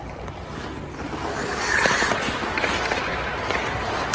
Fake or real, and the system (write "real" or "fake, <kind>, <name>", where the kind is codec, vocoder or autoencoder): real